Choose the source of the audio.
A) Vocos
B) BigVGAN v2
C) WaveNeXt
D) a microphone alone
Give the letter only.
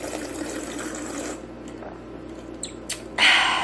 B